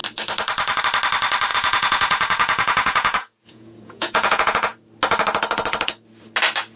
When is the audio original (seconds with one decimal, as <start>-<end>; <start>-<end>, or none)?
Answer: 0.0-1.5; 4.8-6.8